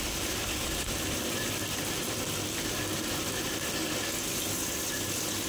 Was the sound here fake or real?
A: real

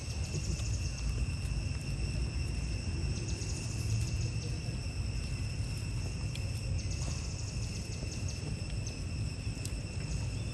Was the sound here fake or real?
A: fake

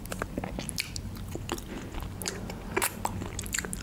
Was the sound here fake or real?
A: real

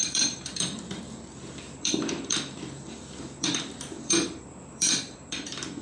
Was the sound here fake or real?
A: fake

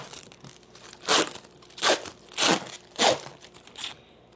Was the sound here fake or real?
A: real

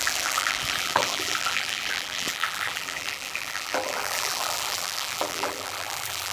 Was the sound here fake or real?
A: fake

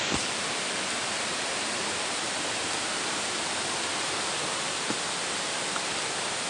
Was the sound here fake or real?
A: fake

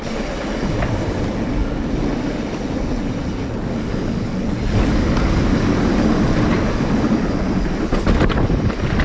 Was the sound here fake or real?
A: real